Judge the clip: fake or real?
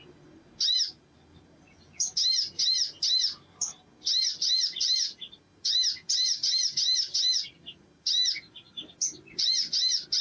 real